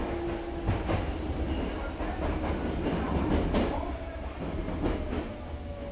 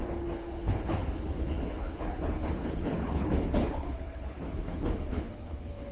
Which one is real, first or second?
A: first